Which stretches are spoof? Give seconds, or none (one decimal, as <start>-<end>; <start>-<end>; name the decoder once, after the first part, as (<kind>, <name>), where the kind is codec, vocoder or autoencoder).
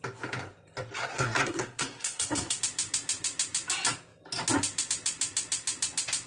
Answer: 1.0-2.6 (codec, SNAC)